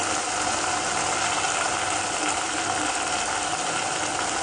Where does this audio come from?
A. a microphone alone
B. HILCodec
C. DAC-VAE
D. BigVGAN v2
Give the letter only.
A